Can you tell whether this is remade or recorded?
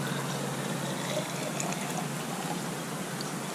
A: recorded